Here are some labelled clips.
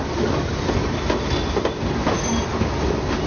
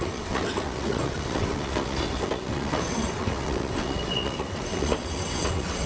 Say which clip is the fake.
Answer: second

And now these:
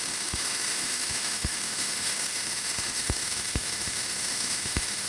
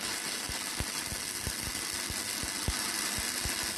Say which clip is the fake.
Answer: first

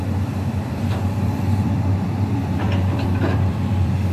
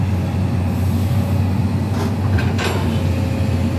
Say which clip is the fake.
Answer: first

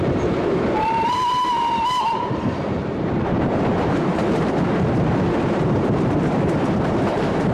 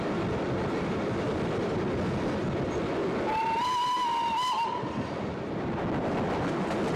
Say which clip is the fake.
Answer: first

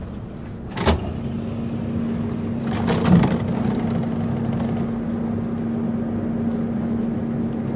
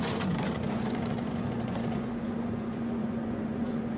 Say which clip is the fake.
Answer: second